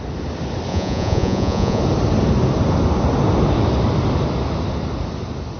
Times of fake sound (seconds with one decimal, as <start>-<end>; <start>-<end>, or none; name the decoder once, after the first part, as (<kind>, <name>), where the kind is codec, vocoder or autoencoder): 0.7-1.8 (vocoder, Vocos)